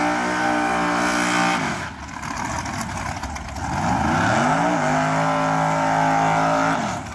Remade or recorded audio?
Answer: recorded